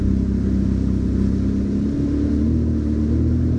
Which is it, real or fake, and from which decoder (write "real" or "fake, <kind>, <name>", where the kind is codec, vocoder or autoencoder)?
real